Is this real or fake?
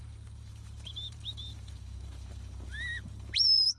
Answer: fake